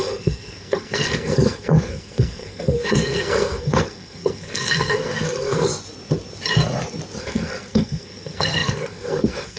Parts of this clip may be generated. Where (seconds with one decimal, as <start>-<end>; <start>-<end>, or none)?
0.0-5.7; 7.2-9.6